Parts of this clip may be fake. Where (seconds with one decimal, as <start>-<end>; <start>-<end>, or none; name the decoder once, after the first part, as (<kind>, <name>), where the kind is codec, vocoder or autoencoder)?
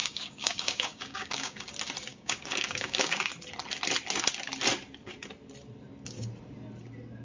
0.0-1.7 (codec, DAC); 2.1-3.3